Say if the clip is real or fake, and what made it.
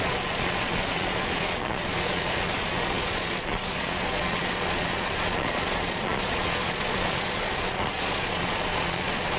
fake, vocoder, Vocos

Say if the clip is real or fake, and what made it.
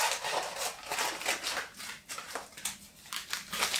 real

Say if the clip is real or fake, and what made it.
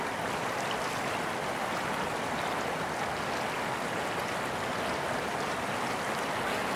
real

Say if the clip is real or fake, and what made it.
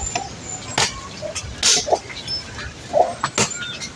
real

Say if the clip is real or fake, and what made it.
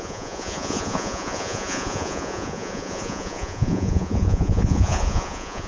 fake, vocoder, Vocos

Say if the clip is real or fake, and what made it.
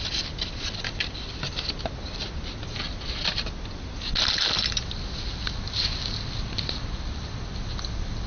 real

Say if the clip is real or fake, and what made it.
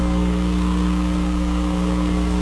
fake, codec, SNAC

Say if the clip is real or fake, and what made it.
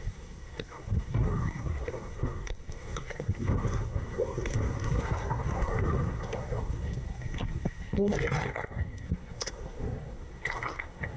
fake, codec, SNAC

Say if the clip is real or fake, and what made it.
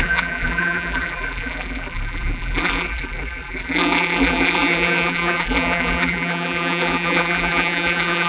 fake, vocoder, BigVGAN v2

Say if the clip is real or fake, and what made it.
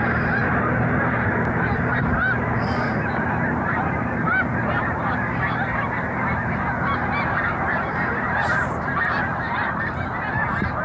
fake, vocoder, BigVGAN v2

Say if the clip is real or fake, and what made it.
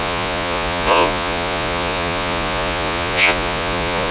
fake, vocoder, Vocos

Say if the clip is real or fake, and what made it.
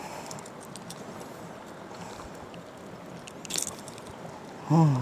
real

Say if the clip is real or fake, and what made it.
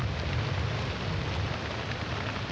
real